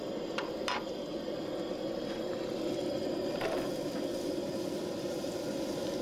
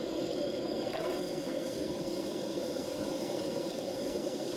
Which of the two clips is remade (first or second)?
second